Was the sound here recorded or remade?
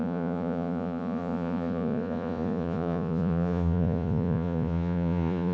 remade